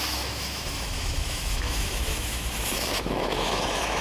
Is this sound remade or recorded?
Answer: remade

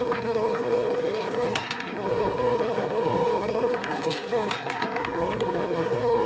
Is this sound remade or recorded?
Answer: remade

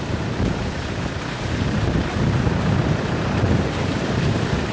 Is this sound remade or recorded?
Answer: remade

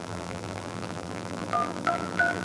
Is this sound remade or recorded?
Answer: remade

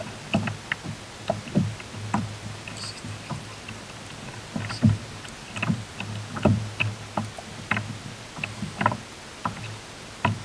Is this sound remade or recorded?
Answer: recorded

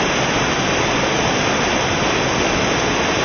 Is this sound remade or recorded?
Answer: recorded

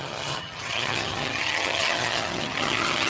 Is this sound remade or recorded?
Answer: remade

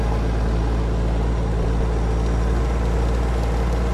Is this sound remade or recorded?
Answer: recorded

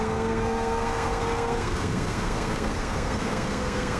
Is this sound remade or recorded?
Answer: remade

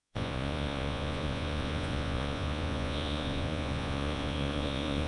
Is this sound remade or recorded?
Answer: remade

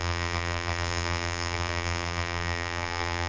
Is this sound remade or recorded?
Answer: remade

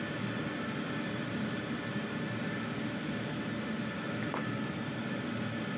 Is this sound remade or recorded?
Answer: recorded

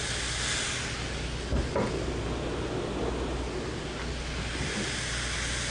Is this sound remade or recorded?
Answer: recorded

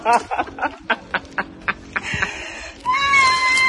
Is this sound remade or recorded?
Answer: recorded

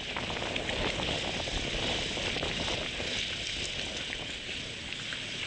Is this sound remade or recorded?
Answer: recorded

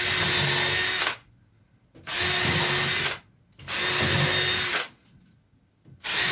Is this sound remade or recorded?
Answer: recorded